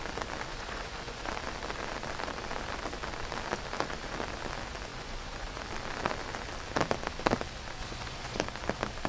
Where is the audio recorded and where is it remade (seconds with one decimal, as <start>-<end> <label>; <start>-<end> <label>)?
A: 0.0-0.5 recorded; 0.5-1.3 remade; 1.3-4.9 recorded; 4.9-5.6 remade; 5.6-7.8 recorded; 7.8-8.4 remade; 8.4-9.1 recorded